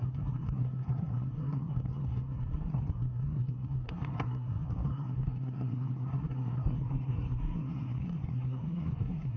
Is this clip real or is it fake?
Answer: fake